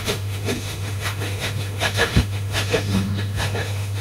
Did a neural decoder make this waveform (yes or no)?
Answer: yes